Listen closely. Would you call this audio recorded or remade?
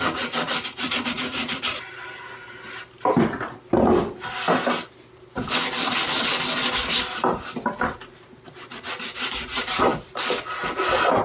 recorded